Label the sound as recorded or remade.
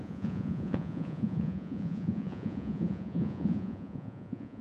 remade